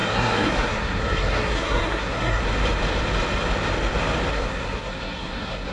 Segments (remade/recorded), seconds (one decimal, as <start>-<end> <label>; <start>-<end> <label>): 0.0-2.4 remade; 2.4-4.3 recorded; 4.3-5.7 remade